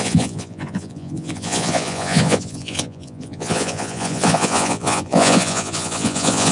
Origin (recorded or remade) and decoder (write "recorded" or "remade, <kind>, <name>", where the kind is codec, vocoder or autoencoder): remade, vocoder, Vocos